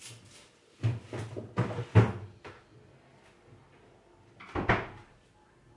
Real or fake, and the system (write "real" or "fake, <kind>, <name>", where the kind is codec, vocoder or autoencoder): real